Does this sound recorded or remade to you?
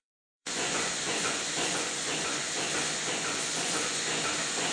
remade